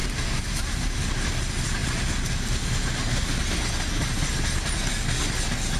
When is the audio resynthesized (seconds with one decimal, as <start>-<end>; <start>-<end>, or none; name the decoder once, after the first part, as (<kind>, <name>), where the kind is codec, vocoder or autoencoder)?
0.0-0.9 (vocoder, BigVGAN v2)